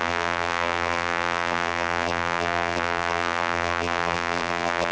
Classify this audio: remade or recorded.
remade